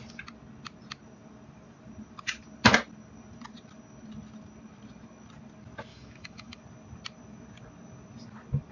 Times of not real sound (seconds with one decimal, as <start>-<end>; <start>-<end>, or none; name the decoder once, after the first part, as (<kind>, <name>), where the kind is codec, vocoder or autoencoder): 5.9-6.6 (autoencoder, DAC-VAE)